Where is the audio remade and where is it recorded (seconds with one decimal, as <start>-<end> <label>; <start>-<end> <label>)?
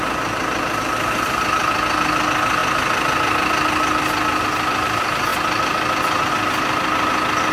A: 0.0-7.5 recorded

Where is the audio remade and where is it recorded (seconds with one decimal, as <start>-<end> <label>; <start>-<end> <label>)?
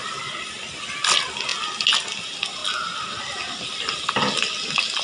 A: 0.0-5.0 recorded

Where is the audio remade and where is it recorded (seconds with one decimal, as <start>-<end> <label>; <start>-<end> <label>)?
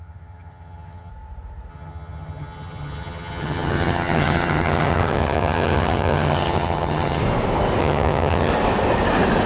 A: 0.0-1.1 remade; 1.1-1.7 recorded; 1.7-7.2 remade; 7.2-7.8 recorded; 7.8-8.5 remade; 8.5-9.5 recorded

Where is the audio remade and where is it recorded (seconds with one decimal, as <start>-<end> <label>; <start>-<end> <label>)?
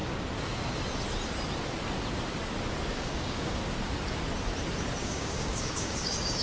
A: 0.0-2.9 recorded; 2.9-3.6 remade; 3.6-5.0 recorded; 5.0-6.4 remade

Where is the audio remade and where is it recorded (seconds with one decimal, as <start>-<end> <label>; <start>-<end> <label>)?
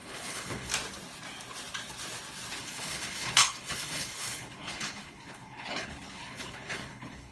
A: 0.0-0.7 remade; 0.7-2.6 recorded; 2.6-7.3 remade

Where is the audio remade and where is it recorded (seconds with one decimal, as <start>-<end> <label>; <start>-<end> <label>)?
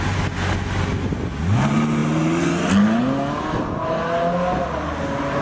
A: 0.0-5.4 recorded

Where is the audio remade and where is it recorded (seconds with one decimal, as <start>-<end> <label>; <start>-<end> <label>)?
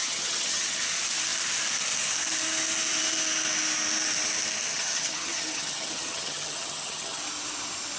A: 0.0-0.8 remade; 0.8-4.7 recorded; 4.7-7.2 remade; 7.2-8.0 recorded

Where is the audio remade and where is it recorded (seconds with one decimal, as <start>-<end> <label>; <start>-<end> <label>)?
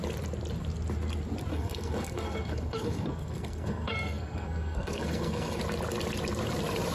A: 0.0-1.5 recorded; 1.5-5.6 remade; 5.6-6.9 recorded